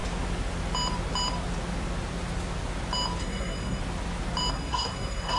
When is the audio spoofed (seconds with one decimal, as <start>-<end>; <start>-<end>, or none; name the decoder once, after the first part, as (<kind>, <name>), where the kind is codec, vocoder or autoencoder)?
3.2-3.8 (codec, SNAC); 4.5-5.4